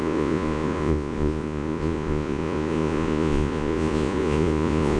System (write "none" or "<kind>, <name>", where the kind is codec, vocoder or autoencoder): vocoder, Vocos